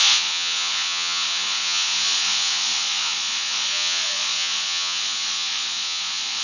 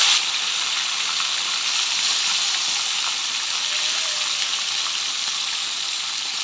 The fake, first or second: first